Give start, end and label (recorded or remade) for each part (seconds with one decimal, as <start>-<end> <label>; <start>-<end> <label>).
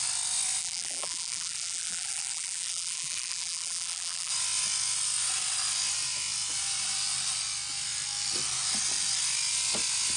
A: 0.0-0.6 recorded; 0.6-4.3 remade; 4.3-10.2 recorded